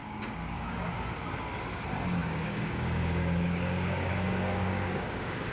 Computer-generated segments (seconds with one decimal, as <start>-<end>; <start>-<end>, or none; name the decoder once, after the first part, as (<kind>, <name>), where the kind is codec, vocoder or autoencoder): 0.0-0.8 (codec, DAC); 2.2-5.5